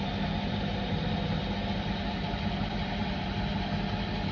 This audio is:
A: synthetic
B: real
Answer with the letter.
B